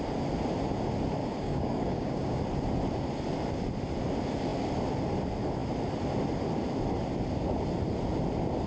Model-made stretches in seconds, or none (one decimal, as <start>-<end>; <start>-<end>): 1.2-2.4